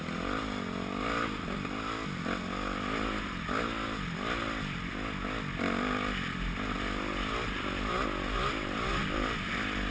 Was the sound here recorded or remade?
recorded